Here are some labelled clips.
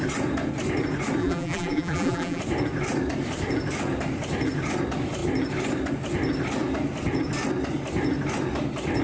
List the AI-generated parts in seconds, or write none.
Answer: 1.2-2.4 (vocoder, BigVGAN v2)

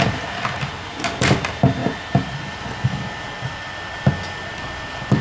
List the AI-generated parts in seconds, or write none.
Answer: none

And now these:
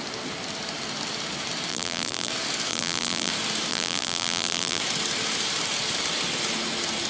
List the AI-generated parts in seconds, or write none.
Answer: 1.7-2.3 (vocoder, BigVGAN v2); 2.7-3.3; 3.7-4.8

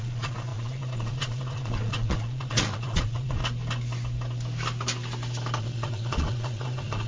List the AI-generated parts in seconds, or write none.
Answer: 0.0-3.4 (vocoder, Vocos); 5.6-7.1

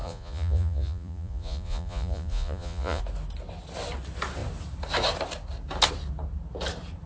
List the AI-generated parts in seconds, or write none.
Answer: 0.0-3.0 (vocoder, Vocos)

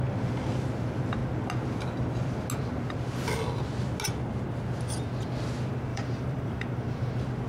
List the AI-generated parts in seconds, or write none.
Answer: 5.9-7.1 (vocoder, BigVGAN v2)

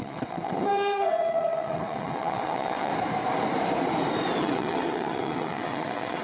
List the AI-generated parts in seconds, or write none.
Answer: 0.0-2.9 (vocoder, WaveNeXt); 4.4-6.2